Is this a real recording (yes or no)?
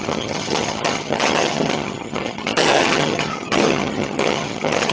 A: no